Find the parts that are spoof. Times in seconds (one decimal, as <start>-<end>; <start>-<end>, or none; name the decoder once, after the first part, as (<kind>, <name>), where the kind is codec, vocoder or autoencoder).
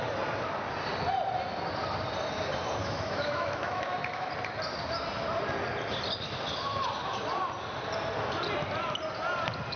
2.8-4.3 (autoencoder, DAC-VAE)